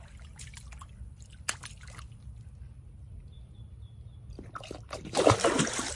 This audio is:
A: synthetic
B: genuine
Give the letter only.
B